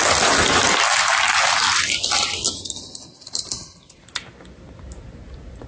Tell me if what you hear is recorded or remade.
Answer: recorded